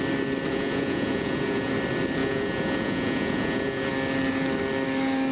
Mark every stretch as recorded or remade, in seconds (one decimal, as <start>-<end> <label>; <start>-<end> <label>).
0.0-0.5 recorded; 0.5-1.7 remade; 1.7-2.2 recorded; 2.2-3.9 remade; 3.9-5.3 recorded